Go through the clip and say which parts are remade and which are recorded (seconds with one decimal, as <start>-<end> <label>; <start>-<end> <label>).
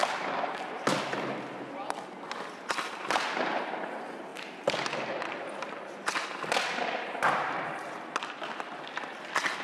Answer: 0.0-9.6 recorded